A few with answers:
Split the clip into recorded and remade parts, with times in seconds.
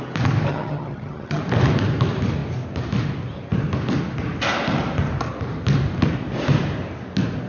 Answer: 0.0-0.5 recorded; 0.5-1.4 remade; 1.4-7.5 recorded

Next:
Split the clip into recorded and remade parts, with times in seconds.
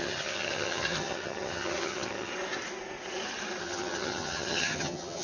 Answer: 0.0-2.3 remade; 2.3-3.6 recorded; 3.6-5.2 remade